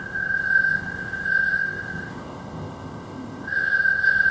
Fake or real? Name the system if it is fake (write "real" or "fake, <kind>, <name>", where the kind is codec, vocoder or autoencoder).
fake, codec, ZipCodec